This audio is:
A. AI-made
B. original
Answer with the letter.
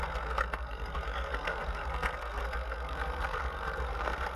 A